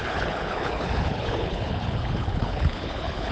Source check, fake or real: fake